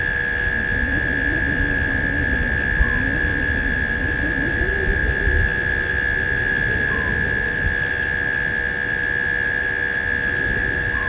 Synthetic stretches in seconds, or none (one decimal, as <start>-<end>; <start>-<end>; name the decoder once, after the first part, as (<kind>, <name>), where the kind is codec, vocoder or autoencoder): 3.3-4.2 (vocoder, BigVGAN v2)